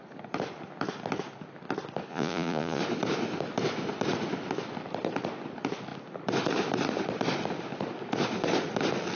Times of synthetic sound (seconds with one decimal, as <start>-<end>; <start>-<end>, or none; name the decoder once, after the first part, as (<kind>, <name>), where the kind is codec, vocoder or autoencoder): 2.1-2.8 (vocoder, Vocos)

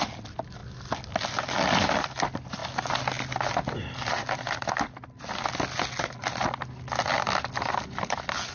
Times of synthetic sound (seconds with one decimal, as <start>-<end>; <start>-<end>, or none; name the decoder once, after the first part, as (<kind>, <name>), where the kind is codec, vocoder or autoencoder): none

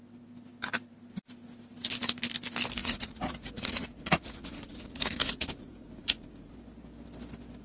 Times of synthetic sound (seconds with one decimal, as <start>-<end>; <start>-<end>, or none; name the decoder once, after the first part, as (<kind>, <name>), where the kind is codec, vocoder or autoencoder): 2.8-6.5 (vocoder, Vocos)

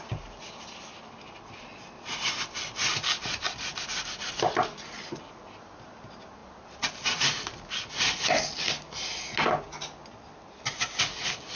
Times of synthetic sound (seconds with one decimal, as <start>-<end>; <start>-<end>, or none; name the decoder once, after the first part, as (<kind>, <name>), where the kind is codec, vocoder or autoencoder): none